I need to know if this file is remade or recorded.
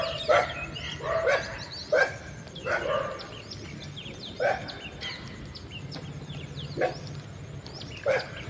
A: recorded